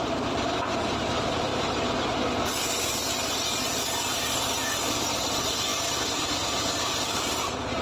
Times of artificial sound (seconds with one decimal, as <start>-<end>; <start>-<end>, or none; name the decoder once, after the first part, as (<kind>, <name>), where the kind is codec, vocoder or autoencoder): 0.0-1.5 (vocoder, BigVGAN v2); 5.2-7.8